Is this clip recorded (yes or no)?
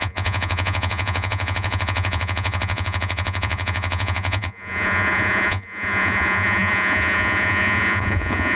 no